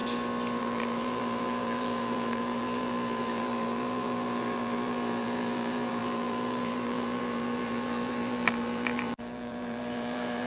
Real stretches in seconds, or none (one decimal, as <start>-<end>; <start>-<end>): 0.0-0.6